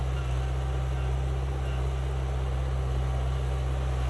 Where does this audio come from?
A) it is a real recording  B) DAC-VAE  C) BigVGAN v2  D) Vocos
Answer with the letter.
A